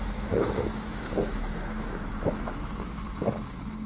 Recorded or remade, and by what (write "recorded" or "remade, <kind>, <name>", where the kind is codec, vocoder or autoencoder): remade, autoencoder, DAC-VAE